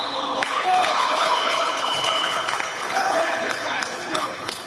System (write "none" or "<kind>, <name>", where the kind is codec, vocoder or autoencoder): codec, HILCodec